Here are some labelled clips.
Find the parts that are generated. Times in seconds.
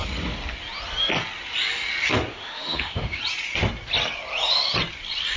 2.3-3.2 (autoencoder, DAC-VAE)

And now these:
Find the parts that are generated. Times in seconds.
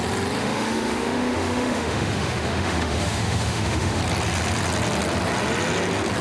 0.4-4.0 (autoencoder, DAC-VAE)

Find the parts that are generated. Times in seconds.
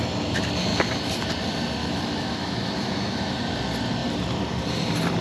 1.8-3.4 (autoencoder, DAC-VAE)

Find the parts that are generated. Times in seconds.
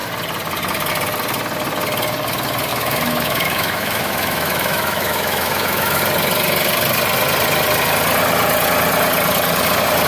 2.7-6.0 (autoencoder, DAC-VAE)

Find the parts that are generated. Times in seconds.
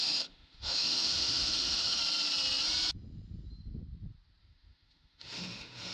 0.0-2.0 (autoencoder, DAC-VAE); 4.4-5.9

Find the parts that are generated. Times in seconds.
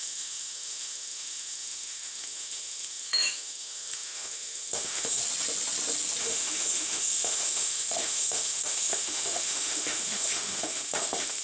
0.0-5.2 (autoencoder, DAC-VAE); 6.2-11.4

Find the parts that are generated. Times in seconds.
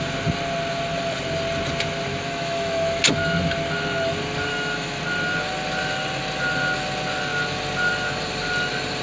2.1-3.0 (autoencoder, DAC-VAE); 4.5-5.0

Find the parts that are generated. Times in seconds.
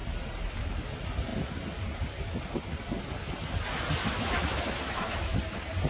4.0-5.1 (autoencoder, DAC-VAE)